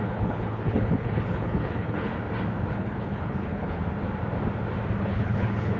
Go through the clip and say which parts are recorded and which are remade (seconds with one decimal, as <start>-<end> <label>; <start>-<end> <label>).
0.0-2.1 remade; 2.1-2.7 recorded; 2.7-3.8 remade; 3.8-5.0 recorded; 5.0-5.8 remade